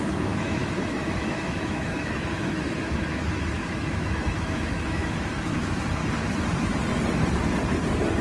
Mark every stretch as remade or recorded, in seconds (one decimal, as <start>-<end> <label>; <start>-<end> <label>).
0.0-6.0 remade; 6.0-8.2 recorded

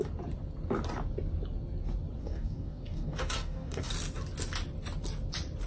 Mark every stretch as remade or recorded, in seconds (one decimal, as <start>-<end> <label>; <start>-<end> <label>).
0.0-2.2 recorded; 2.2-3.9 remade; 3.9-5.7 recorded

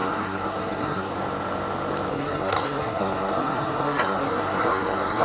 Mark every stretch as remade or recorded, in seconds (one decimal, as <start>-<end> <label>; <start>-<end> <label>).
0.0-1.1 remade; 1.1-2.1 recorded; 2.1-5.2 remade

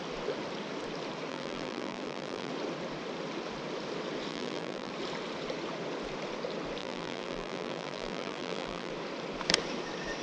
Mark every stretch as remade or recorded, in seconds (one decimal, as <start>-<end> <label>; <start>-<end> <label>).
0.0-1.3 recorded; 1.3-2.5 remade; 2.5-4.3 recorded; 4.3-4.9 remade; 4.9-6.8 recorded; 6.8-8.9 remade; 8.9-10.2 recorded

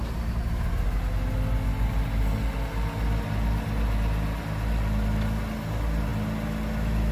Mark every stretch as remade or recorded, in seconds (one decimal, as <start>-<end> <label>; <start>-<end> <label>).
0.0-7.1 recorded

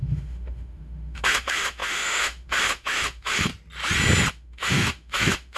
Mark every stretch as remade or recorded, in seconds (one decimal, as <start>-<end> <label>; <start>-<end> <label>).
0.0-3.5 remade; 3.5-4.3 recorded; 4.3-5.6 remade

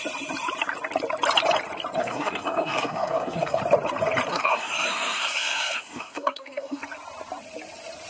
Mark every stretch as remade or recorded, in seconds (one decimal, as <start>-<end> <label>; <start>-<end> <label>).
0.0-2.0 recorded; 2.0-3.6 remade; 3.6-4.3 recorded; 4.3-6.8 remade; 6.8-8.1 recorded